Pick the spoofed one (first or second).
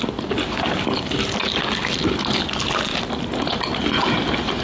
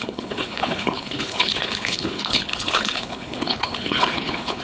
second